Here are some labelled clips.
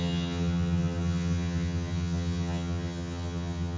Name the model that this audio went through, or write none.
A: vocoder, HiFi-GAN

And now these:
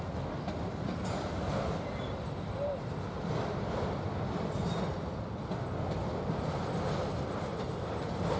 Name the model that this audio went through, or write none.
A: none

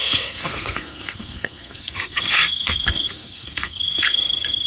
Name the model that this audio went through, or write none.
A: codec, SNAC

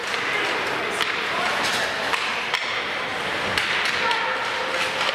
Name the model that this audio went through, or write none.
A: none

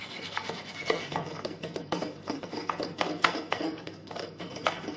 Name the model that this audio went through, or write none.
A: codec, SNAC